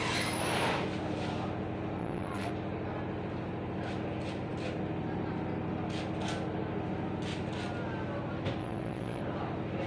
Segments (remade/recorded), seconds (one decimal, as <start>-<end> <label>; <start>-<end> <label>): 0.0-2.0 recorded; 2.0-2.5 remade; 2.5-8.6 recorded; 8.6-9.2 remade; 9.2-9.9 recorded